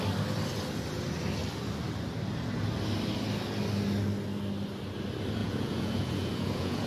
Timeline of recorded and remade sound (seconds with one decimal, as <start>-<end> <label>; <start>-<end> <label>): 0.0-5.4 recorded; 5.4-6.9 remade